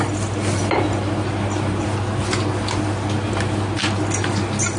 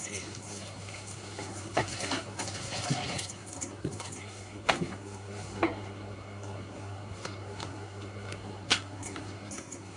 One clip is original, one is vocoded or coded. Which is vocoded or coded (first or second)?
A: second